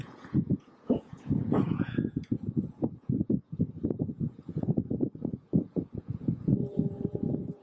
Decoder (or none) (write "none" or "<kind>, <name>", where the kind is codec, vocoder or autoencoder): vocoder, Vocos